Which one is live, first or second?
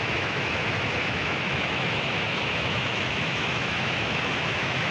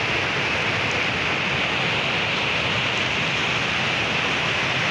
second